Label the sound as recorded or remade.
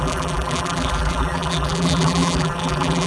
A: remade